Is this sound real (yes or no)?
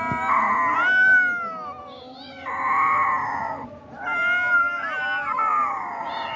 yes